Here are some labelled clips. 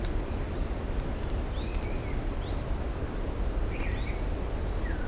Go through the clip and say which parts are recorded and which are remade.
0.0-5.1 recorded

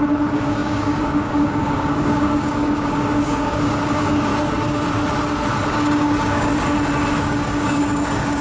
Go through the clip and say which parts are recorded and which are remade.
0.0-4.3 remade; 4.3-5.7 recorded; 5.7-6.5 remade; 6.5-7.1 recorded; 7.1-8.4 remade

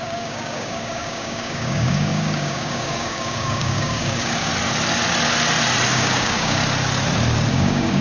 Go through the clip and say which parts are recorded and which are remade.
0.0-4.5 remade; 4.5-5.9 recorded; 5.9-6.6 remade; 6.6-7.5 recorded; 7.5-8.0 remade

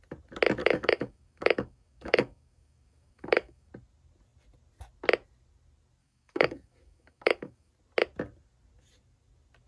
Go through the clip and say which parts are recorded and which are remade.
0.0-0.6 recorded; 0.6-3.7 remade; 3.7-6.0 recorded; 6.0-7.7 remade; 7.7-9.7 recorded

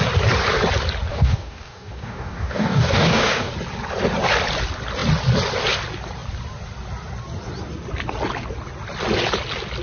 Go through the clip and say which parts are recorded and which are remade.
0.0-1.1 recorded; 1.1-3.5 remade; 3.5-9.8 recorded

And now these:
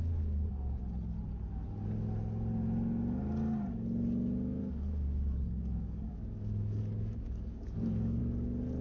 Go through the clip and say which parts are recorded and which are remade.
0.0-0.8 remade; 0.8-4.6 recorded; 4.6-8.2 remade; 8.2-8.8 recorded

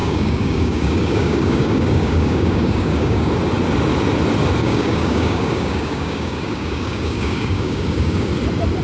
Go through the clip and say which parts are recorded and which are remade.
0.0-3.3 remade; 3.3-4.6 recorded; 4.6-8.3 remade; 8.3-8.8 recorded